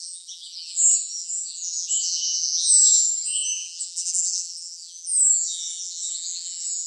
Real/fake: fake